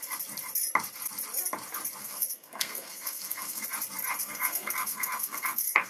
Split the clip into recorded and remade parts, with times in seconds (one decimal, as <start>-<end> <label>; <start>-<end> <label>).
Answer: 0.0-2.0 recorded; 2.0-3.6 remade; 3.6-4.2 recorded; 4.2-5.9 remade